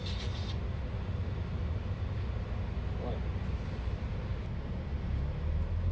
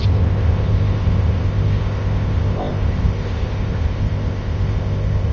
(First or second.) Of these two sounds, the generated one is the second